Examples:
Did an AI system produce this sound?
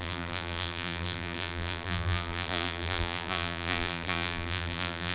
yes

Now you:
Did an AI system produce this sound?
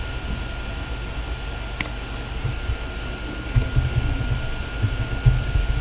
no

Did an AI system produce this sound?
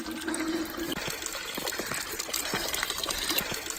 no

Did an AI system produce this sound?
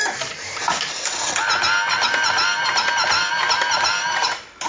no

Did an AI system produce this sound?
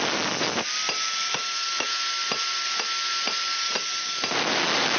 no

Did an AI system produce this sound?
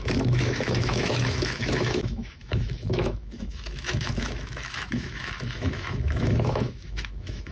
yes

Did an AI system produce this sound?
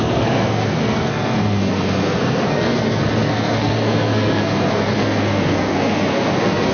yes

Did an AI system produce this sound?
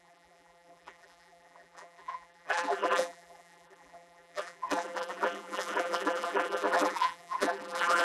yes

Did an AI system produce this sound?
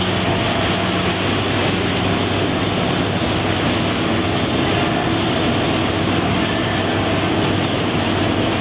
no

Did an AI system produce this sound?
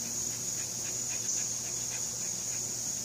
no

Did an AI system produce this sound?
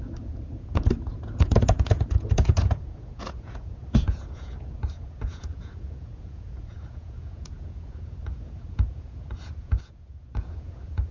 yes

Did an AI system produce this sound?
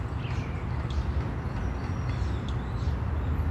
no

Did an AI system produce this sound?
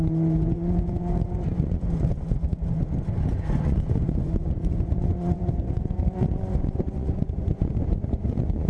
yes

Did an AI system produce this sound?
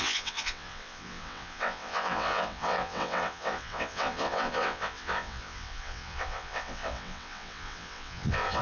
yes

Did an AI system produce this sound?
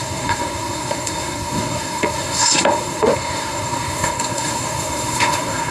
yes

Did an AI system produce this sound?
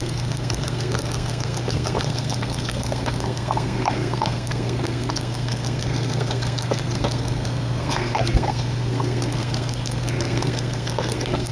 yes